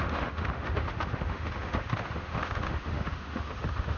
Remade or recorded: remade